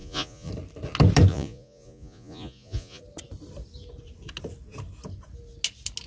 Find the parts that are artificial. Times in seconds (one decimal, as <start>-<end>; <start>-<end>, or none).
0.0-0.5; 1.3-3.0